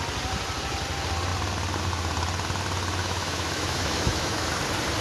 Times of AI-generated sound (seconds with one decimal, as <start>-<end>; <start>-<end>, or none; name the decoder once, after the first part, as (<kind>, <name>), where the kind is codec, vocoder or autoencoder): 3.0-4.5 (autoencoder, DAC-VAE)